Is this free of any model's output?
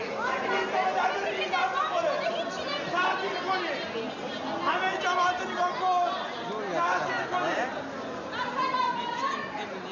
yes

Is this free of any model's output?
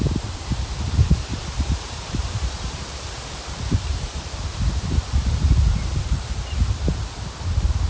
no